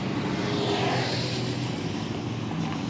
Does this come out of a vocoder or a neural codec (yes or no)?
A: no